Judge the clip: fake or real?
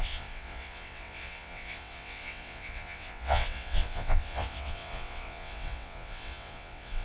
fake